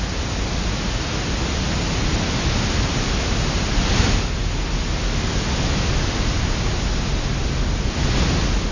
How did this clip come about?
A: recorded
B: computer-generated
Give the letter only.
A